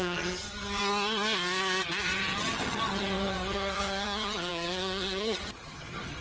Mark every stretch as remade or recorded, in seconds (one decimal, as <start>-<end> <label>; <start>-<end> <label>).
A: 0.0-0.8 remade; 0.8-2.0 recorded; 2.0-6.2 remade